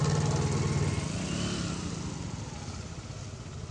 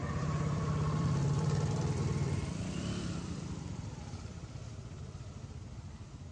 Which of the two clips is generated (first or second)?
second